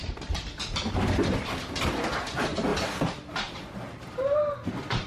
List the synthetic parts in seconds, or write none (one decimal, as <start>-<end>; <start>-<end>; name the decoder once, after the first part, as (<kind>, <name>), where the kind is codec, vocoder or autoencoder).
2.7-5.1 (vocoder, BigVGAN v2)